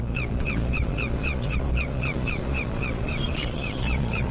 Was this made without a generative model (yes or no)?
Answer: no